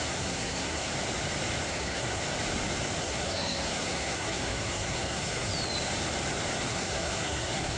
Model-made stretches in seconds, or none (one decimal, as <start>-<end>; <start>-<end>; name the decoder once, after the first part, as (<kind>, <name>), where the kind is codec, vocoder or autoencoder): 0.0-0.9 (codec, SNAC); 1.7-2.2; 3.0-5.5; 6.7-7.8